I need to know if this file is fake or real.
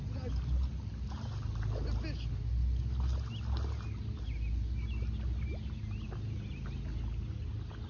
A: real